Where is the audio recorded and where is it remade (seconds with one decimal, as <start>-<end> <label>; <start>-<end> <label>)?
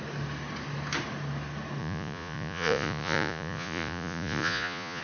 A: 0.0-1.8 recorded; 1.8-5.0 remade